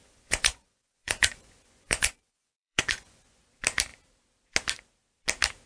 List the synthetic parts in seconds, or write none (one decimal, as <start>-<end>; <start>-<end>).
0.0-3.4